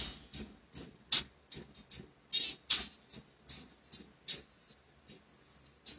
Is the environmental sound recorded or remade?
recorded